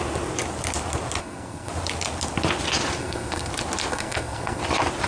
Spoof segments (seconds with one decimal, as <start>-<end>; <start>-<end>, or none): 1.2-1.7; 3.0-3.5; 3.9-4.6